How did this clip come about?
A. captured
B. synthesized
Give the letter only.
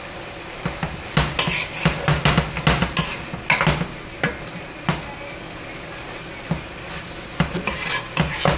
A